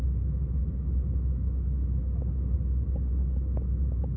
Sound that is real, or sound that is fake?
real